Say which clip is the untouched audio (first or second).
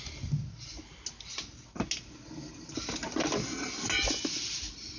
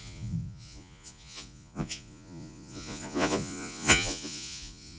first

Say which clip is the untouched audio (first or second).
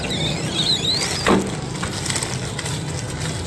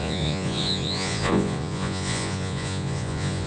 first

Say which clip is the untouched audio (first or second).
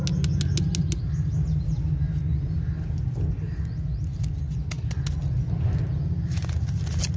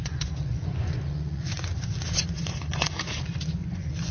first